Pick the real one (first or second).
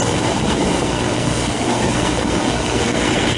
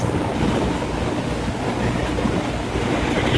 second